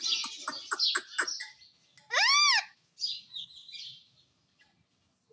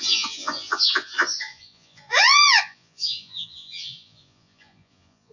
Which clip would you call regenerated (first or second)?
second